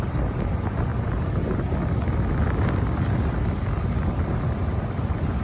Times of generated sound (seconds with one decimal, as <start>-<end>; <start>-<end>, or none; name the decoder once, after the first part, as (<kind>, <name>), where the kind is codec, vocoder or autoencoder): none